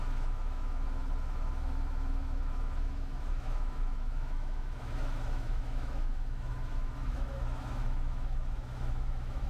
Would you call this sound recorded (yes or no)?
no